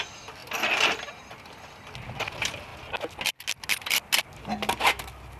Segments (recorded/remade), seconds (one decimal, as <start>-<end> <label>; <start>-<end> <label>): 0.0-5.4 recorded